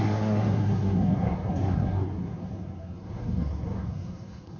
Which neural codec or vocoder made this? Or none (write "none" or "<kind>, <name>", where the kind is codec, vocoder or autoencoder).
codec, SNAC